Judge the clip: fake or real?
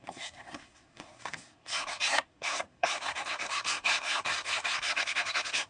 fake